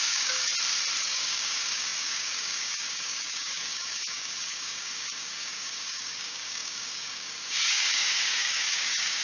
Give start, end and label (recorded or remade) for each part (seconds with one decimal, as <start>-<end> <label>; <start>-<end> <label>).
0.0-0.5 remade; 0.5-1.0 recorded; 1.0-9.2 remade